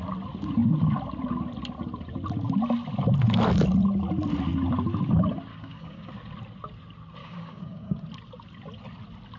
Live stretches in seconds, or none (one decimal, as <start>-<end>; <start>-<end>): 0.0-5.5; 6.1-7.2; 8.0-9.4